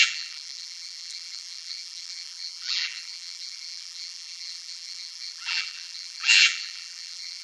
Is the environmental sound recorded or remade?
remade